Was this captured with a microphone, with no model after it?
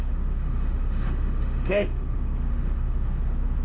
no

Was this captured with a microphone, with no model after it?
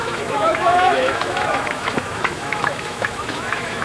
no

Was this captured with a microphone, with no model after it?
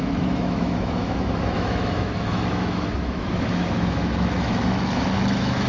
no